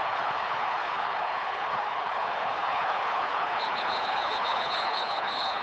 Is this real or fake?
fake